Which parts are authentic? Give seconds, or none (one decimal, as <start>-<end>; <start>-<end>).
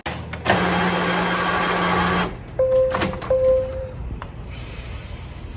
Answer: 0.0-3.7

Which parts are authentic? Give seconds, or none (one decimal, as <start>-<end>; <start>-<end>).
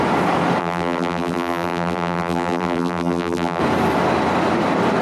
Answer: 0.0-0.6; 3.6-5.0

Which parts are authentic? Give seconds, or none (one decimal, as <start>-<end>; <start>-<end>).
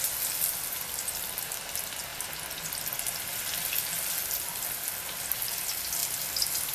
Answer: 0.0-6.7